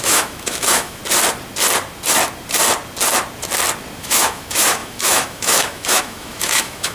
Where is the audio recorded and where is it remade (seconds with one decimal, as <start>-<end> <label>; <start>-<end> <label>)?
0.0-1.0 remade; 1.0-4.0 recorded; 4.0-6.9 remade